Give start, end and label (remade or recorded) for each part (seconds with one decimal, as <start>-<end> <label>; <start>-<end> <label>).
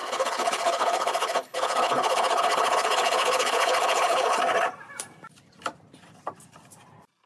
0.0-4.4 remade; 4.4-7.3 recorded